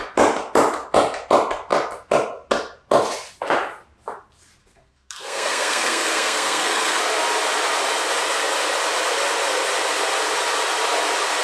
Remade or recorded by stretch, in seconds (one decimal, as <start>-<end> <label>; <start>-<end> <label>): 0.0-4.6 recorded; 4.6-7.0 remade; 7.0-11.4 recorded